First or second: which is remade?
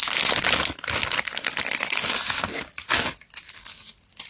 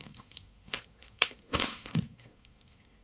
second